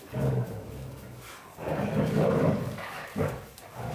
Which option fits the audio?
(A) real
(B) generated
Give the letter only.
B